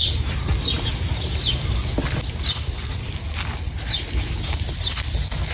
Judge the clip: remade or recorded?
recorded